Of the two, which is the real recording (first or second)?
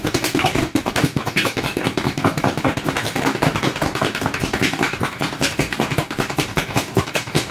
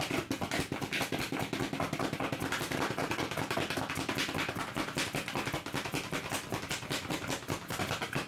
second